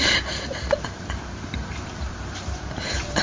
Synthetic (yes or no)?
yes